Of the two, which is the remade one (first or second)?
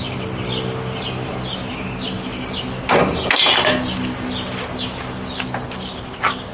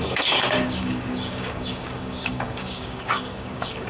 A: second